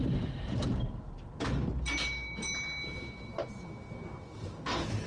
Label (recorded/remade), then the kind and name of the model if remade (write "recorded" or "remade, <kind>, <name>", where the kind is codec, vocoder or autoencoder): recorded